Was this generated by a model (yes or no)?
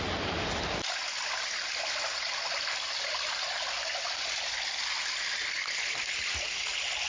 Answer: no